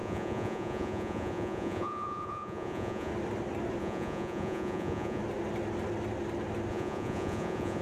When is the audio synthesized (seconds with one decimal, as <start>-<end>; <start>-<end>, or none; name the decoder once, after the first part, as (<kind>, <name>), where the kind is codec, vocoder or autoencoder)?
0.0-3.1 (vocoder, Vocos); 3.8-5.2; 6.7-7.8